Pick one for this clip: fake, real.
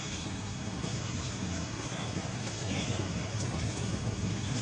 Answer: fake